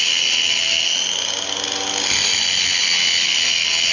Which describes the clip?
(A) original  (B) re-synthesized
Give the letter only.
A